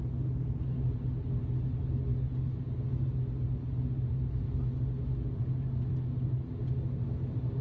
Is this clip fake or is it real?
real